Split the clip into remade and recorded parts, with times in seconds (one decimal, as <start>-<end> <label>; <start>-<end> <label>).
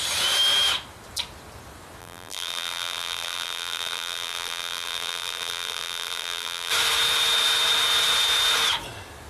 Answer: 0.0-2.0 recorded; 2.0-6.7 remade; 6.7-9.3 recorded